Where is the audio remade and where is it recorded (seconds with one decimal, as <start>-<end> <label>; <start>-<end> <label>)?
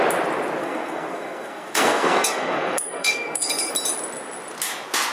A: 0.0-0.6 recorded; 0.6-3.7 remade; 3.7-5.1 recorded